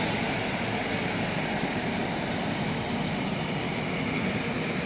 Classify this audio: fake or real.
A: real